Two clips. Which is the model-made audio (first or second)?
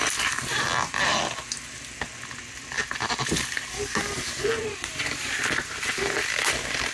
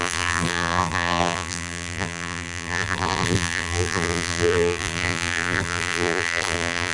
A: second